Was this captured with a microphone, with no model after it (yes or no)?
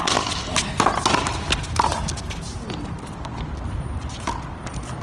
yes